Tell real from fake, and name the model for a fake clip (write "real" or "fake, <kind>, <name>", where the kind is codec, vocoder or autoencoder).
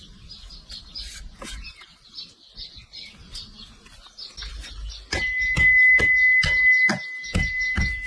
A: real